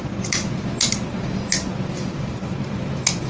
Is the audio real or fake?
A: real